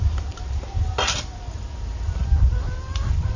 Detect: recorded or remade recorded